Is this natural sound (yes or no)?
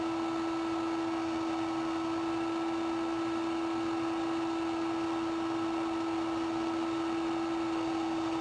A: yes